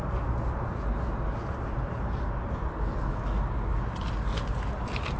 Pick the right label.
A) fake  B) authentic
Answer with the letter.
B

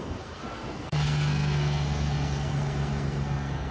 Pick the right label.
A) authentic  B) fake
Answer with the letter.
B